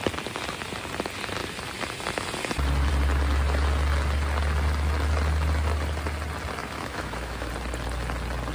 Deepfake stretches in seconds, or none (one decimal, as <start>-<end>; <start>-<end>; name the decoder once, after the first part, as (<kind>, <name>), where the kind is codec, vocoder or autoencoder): 6.6-7.5 (autoencoder, DAC-VAE)

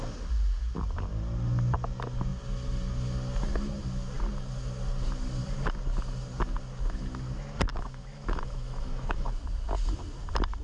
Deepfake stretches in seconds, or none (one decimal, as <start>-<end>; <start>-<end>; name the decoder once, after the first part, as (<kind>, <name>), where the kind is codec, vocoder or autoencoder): 7.7-9.3 (autoencoder, DAC-VAE)

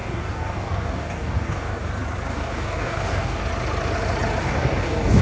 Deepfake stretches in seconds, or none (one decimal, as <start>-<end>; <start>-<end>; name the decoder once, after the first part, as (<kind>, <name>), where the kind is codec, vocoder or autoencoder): 0.0-1.9 (codec, DAC); 2.3-3.4; 4.4-5.2

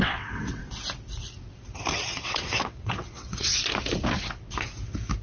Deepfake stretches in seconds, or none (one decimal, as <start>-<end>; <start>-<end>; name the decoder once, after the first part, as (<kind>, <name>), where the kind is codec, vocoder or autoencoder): 0.0-0.6 (vocoder, WaveNeXt); 1.9-3.5

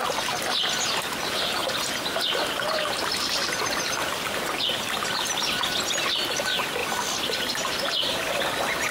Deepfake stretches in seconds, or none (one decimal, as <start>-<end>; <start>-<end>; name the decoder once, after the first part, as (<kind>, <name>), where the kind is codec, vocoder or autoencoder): 6.8-8.2 (vocoder, BigVGAN v2)

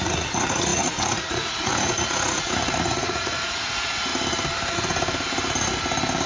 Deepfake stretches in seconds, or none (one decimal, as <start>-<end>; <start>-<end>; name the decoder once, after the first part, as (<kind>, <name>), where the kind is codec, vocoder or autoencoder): 0.0-4.1 (vocoder, Vocos)